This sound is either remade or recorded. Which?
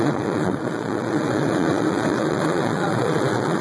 remade